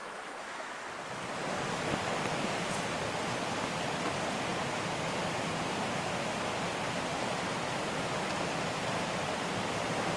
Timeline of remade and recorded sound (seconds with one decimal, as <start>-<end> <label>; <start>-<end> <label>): 0.0-0.8 remade; 0.8-10.2 recorded